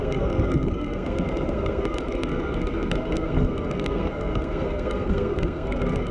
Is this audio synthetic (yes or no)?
yes